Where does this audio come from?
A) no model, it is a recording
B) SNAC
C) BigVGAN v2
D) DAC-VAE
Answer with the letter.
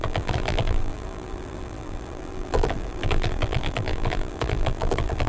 C